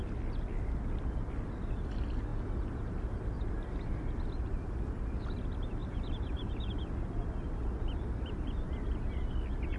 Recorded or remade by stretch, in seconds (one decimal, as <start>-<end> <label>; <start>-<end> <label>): 0.0-5.8 recorded; 5.8-6.7 remade; 6.7-9.8 recorded